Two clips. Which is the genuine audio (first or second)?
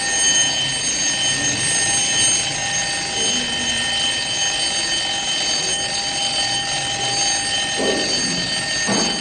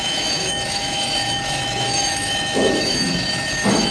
first